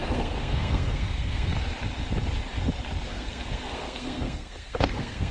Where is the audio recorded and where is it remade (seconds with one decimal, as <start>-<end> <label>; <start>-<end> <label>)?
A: 0.0-1.5 remade; 1.5-3.1 recorded; 3.1-5.3 remade